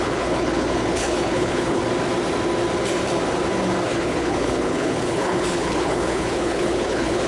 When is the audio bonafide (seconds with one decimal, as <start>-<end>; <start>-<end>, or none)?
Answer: 1.8-3.9